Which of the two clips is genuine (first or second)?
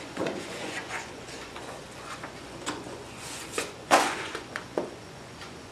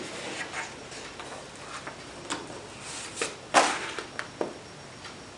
second